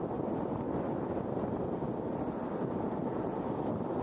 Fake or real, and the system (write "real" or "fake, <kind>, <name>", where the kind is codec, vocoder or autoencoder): real